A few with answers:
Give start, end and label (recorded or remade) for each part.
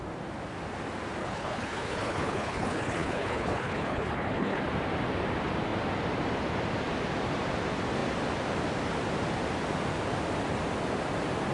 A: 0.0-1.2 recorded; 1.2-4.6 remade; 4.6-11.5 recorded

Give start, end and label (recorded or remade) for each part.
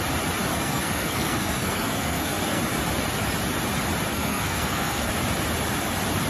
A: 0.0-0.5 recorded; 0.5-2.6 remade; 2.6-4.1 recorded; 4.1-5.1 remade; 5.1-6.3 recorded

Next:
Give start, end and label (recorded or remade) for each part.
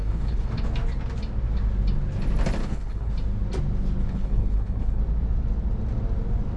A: 0.0-0.5 remade; 0.5-2.6 recorded; 2.6-3.1 remade; 3.1-4.0 recorded; 4.0-5.0 remade; 5.0-6.6 recorded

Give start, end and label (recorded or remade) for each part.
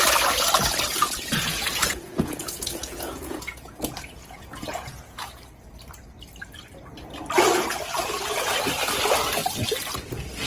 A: 0.0-0.9 recorded; 0.9-5.2 remade; 5.2-10.5 recorded